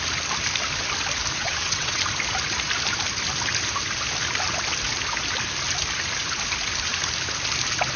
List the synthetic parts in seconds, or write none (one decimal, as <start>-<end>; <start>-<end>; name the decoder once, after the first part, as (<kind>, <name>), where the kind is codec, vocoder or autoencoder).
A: 1.4-2.0 (vocoder, WaveNeXt)